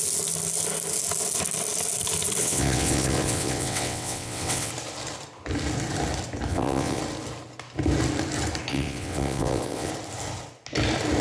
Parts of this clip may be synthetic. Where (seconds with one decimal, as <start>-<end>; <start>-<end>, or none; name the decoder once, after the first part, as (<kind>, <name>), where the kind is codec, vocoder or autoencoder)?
2.4-4.7 (vocoder, WaveNeXt); 6.5-7.0; 8.7-9.9